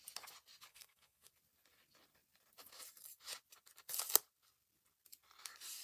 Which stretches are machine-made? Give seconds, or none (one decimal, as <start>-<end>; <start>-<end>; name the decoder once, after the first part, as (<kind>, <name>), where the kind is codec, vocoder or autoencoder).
0.7-1.3 (codec, SNAC)